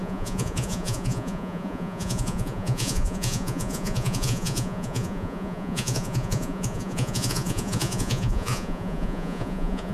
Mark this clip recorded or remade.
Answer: remade